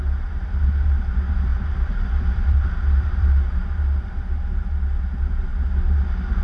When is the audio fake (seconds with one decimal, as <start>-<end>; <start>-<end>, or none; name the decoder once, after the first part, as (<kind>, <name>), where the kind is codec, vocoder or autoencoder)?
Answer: 1.5-4.6 (vocoder, BigVGAN v2)